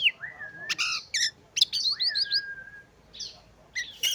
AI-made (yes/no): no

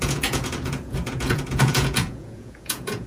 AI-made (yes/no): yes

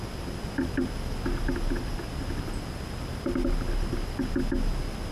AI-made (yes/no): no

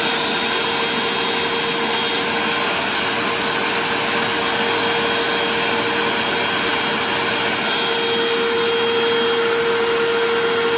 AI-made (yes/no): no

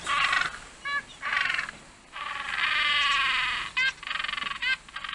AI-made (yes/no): no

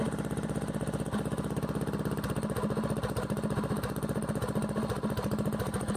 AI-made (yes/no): no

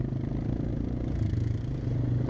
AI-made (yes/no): no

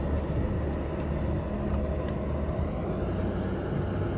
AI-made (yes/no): no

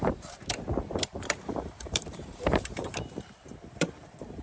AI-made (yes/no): yes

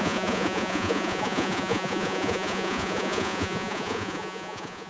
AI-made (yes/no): yes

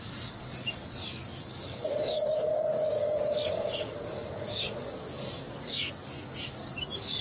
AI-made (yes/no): yes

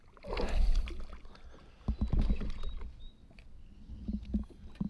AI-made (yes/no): no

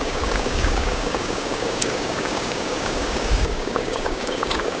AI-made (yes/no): yes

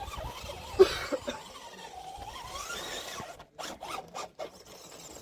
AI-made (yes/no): no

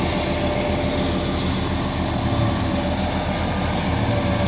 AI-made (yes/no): no